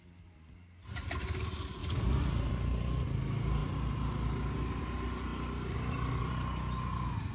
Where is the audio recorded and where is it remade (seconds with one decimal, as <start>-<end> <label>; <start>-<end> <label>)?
0.0-7.3 recorded